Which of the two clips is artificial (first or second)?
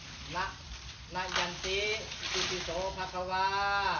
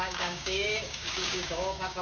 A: second